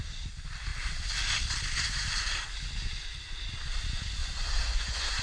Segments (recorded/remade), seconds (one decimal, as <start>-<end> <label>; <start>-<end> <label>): 0.0-4.2 recorded; 4.2-5.2 remade